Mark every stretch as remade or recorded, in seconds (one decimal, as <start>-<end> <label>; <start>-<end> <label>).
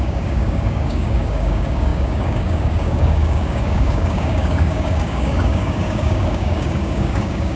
0.0-7.6 remade